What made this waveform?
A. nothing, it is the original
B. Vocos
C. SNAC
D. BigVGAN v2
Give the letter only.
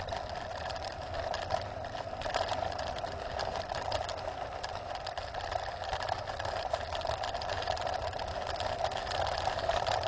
A